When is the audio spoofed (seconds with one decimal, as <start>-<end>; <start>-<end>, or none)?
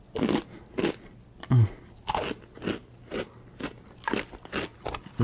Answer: 2.8-3.8